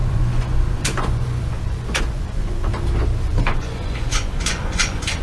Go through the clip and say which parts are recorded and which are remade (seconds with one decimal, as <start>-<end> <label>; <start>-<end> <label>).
0.0-2.7 remade; 2.7-3.2 recorded; 3.2-5.2 remade